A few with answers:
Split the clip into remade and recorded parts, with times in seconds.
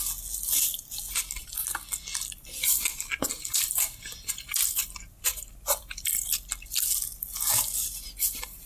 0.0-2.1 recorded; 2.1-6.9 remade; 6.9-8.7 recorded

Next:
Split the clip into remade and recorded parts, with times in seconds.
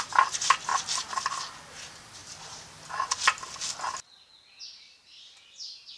0.0-2.2 recorded; 2.2-3.1 remade; 3.1-6.0 recorded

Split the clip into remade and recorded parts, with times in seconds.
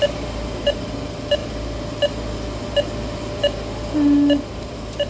0.0-1.4 remade; 1.4-4.5 recorded; 4.5-5.1 remade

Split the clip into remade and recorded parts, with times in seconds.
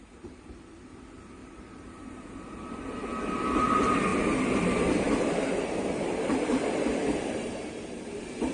0.0-1.4 recorded; 1.4-2.4 remade; 2.4-3.1 recorded; 3.1-3.6 remade; 3.6-4.1 recorded; 4.1-6.7 remade; 6.7-8.5 recorded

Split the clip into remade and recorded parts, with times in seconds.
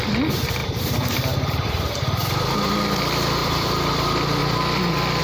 0.0-0.6 recorded; 0.6-2.6 remade; 2.6-3.4 recorded; 3.4-4.0 remade; 4.0-5.2 recorded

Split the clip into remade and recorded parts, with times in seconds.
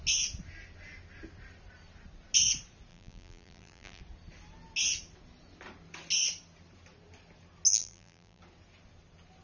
0.0-2.9 recorded; 2.9-4.0 remade; 4.0-7.7 recorded; 7.7-8.4 remade; 8.4-9.4 recorded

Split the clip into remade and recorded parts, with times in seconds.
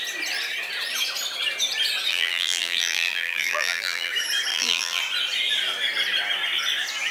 0.0-2.1 recorded; 2.1-4.1 remade; 4.1-4.5 recorded; 4.5-5.0 remade; 5.0-7.1 recorded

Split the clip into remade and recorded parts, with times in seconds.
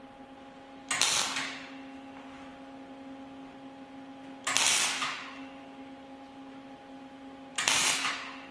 0.0-7.5 recorded; 7.5-8.1 remade; 8.1-8.5 recorded